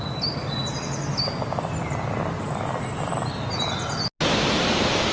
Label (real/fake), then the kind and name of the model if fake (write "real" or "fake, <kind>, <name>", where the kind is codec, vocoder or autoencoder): real